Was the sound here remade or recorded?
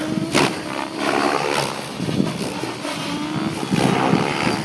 recorded